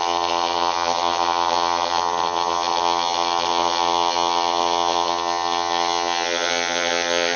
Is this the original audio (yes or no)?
no